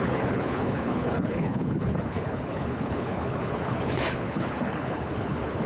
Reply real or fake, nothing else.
fake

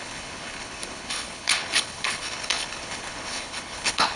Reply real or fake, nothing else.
fake